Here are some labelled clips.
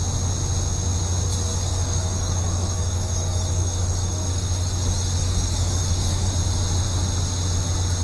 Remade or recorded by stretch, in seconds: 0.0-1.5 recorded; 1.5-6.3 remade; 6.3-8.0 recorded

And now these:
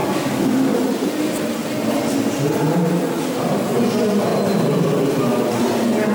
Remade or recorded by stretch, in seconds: 0.0-0.8 remade; 0.8-6.1 recorded

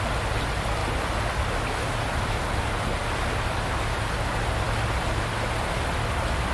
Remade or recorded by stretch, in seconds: 0.0-6.5 recorded

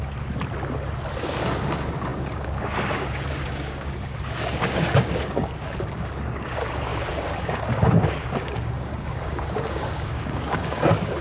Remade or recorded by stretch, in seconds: 0.0-1.2 recorded; 1.2-11.2 remade

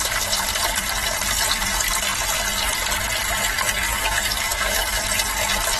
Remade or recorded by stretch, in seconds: 0.0-3.9 recorded; 3.9-5.0 remade; 5.0-5.8 recorded

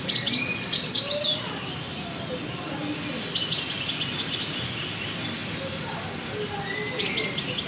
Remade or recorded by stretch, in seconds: 0.0-7.7 recorded

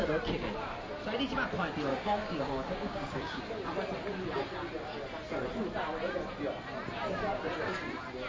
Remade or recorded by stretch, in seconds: 0.0-1.9 recorded; 1.9-3.4 remade; 3.4-8.3 recorded